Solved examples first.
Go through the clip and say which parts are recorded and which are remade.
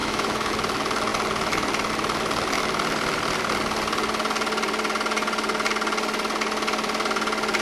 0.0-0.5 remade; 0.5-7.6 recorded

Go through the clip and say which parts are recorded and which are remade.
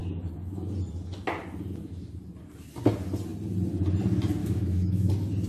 0.0-4.4 recorded; 4.4-5.1 remade; 5.1-5.5 recorded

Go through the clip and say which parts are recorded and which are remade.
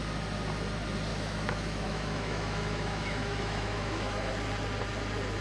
0.0-1.1 recorded; 1.1-4.3 remade; 4.3-5.4 recorded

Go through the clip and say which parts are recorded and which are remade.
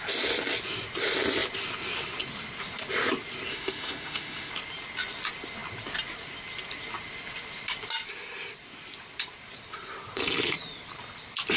0.0-3.5 recorded; 3.5-4.5 remade; 4.5-11.6 recorded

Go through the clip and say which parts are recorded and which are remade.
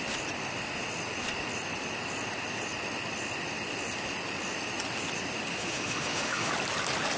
0.0-5.5 recorded; 5.5-6.5 remade; 6.5-7.2 recorded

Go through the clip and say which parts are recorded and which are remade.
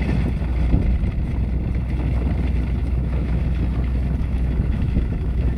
0.0-2.8 recorded; 2.8-3.4 remade; 3.4-4.2 recorded; 4.2-5.6 remade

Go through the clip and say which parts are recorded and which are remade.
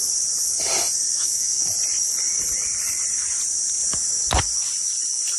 0.0-1.1 recorded; 1.1-1.7 remade; 1.7-5.4 recorded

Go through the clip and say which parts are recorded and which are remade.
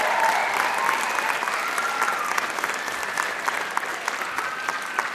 0.0-5.1 recorded